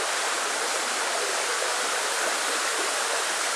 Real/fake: real